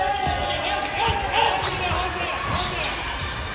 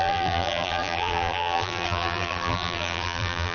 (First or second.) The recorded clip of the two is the first